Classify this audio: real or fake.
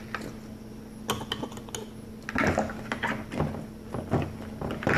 real